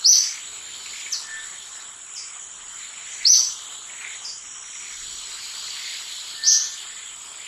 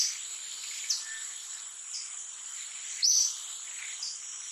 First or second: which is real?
first